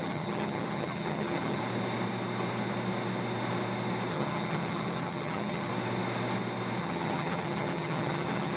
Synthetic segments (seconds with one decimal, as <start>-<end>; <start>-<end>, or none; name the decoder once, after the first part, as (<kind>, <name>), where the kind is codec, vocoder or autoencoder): 0.0-1.6 (vocoder, HiFi-GAN); 4.1-5.7; 6.8-8.6